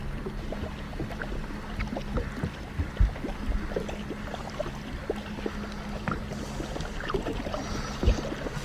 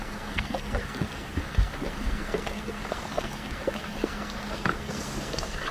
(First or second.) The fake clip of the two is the second